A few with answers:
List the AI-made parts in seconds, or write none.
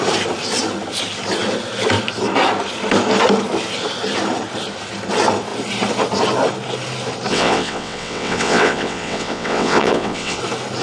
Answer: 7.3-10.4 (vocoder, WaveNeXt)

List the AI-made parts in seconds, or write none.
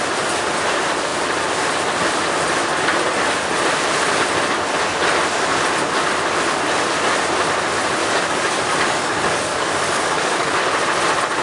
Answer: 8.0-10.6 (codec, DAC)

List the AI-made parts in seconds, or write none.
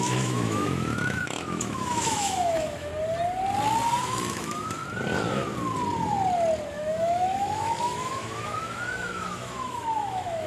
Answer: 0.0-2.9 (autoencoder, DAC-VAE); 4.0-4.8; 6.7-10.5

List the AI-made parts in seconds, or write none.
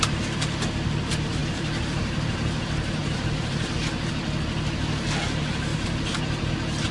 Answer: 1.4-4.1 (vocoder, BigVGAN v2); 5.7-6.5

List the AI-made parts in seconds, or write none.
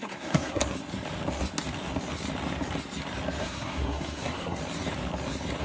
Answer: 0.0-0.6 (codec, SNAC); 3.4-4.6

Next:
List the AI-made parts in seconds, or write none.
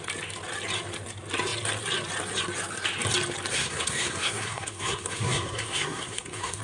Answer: 3.5-6.6 (codec, SNAC)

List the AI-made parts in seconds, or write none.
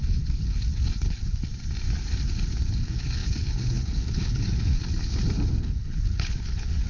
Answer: 0.0-1.5 (codec, HILCodec); 2.7-4.8; 5.6-6.9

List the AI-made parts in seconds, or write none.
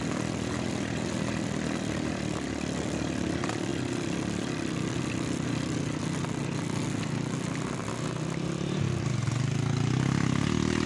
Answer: none